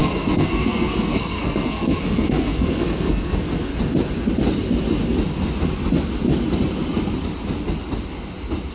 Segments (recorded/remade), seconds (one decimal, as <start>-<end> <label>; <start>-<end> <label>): 0.0-3.7 remade; 3.7-8.7 recorded